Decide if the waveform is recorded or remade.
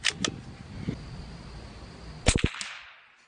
recorded